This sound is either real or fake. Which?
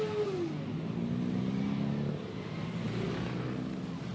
real